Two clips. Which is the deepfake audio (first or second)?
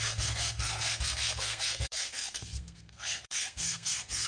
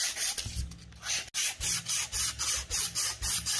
first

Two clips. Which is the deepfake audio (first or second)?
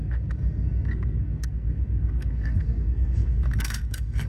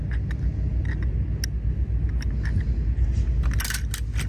first